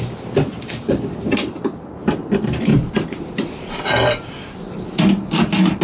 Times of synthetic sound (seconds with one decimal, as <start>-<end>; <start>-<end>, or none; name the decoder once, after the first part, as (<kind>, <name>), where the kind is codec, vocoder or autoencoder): none